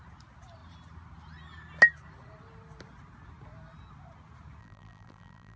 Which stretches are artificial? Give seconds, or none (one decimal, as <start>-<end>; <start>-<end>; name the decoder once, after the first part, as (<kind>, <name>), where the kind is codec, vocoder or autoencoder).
4.6-5.6 (vocoder, BigVGAN v2)